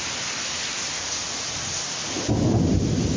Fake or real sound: real